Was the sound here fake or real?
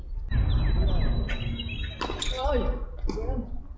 real